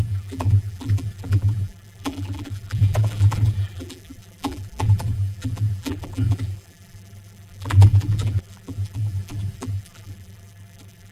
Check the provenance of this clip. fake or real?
fake